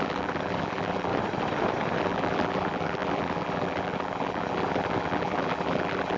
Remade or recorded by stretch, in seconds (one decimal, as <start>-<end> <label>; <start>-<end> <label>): 0.0-1.1 remade; 1.1-2.0 recorded; 2.0-6.2 remade